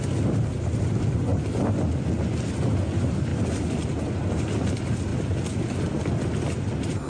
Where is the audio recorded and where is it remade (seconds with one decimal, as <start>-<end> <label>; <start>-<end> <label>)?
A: 0.0-7.1 recorded